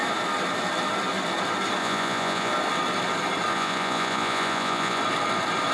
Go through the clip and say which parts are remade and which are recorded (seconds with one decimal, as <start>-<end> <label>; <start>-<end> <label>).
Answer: 0.0-1.8 recorded; 1.8-2.5 remade; 2.5-3.5 recorded; 3.5-5.0 remade; 5.0-5.7 recorded